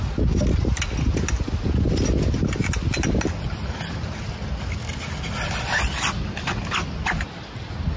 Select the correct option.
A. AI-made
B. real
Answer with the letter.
B